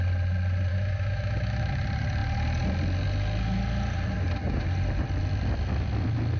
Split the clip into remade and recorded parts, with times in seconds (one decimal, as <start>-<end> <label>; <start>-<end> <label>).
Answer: 0.0-0.7 recorded; 0.7-1.7 remade; 1.7-6.4 recorded